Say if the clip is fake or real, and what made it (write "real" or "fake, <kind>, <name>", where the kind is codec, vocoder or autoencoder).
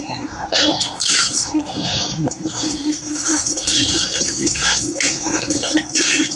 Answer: fake, codec, SNAC